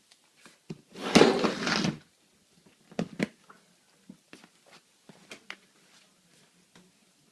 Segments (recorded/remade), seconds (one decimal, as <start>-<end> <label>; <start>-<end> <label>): 0.0-7.3 recorded